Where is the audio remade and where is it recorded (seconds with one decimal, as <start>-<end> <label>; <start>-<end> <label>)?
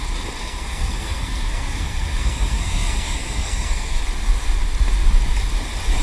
0.0-0.4 recorded; 0.4-4.0 remade; 4.0-6.0 recorded